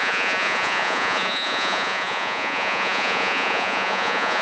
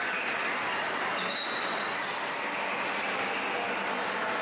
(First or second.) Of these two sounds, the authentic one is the second